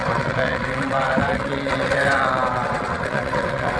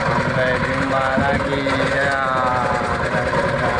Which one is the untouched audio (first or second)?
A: second